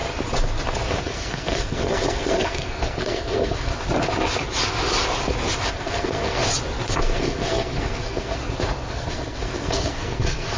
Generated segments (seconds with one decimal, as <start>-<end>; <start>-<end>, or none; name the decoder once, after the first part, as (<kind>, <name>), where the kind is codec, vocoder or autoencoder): 1.0-3.7 (codec, SNAC); 5.7-6.4; 7.0-8.4; 8.9-10.6